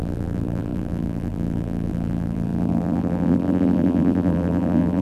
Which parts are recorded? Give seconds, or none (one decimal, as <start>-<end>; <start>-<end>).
none